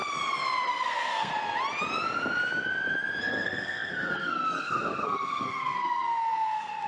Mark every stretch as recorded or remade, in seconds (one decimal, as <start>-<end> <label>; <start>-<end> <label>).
0.0-0.7 recorded; 0.7-1.3 remade; 1.3-3.2 recorded; 3.2-6.9 remade